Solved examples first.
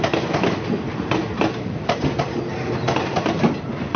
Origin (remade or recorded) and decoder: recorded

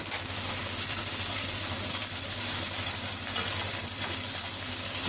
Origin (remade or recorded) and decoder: recorded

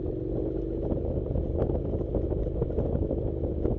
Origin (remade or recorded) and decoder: recorded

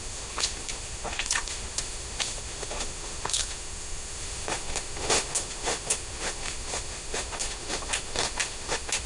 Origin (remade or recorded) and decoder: remade, autoencoder, DAC-VAE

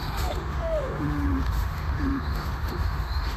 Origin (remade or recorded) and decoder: remade, autoencoder, DAC-VAE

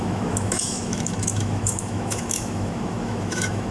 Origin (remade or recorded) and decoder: remade, autoencoder, DAC-VAE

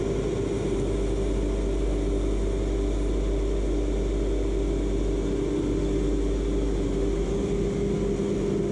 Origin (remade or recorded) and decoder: recorded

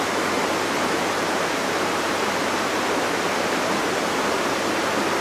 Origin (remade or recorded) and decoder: recorded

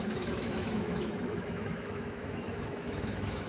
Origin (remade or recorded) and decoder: remade, autoencoder, DAC-VAE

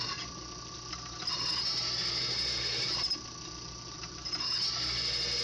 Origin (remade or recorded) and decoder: recorded